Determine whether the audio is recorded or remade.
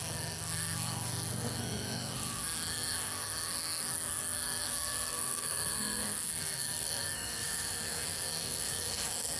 remade